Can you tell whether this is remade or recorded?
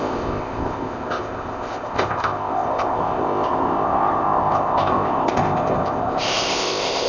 remade